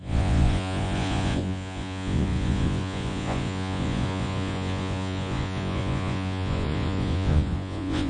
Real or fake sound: fake